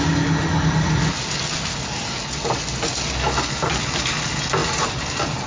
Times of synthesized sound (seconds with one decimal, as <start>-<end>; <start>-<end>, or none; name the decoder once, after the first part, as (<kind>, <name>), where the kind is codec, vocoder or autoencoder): 4.6-5.5 (vocoder, BigVGAN v2)